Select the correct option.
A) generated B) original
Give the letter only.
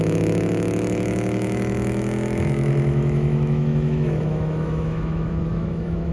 A